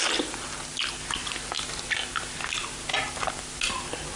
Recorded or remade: recorded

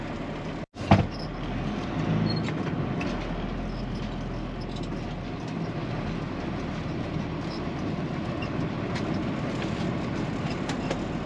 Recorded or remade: recorded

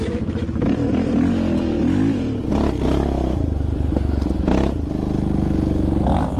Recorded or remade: recorded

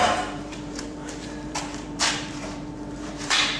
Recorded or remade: remade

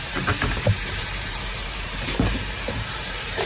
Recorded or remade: remade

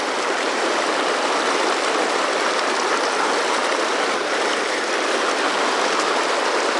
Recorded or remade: remade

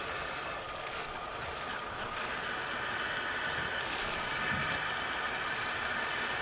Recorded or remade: recorded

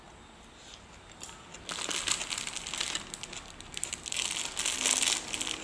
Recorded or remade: recorded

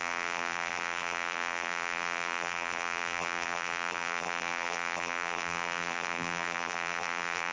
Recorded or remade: remade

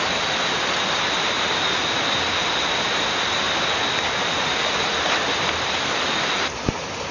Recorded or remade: recorded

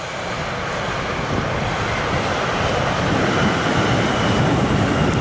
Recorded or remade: recorded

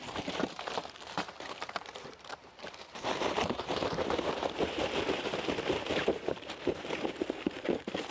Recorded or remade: remade